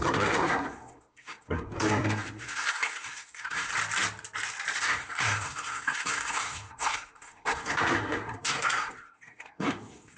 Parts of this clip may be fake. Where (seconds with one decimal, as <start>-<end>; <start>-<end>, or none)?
0.0-3.7; 4.8-10.2